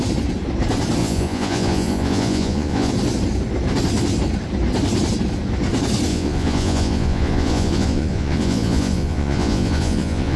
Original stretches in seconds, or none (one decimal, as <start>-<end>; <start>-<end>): 0.0-1.0; 2.9-6.1